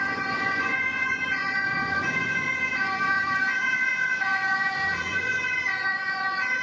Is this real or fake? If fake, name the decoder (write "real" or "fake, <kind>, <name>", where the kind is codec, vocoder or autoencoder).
fake, vocoder, Vocos